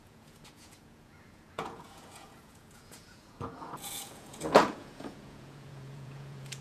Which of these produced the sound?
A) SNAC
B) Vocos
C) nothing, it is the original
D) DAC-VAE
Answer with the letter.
B